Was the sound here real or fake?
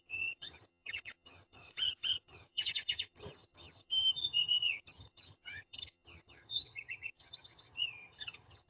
fake